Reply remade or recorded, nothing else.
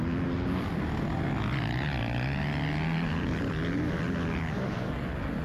recorded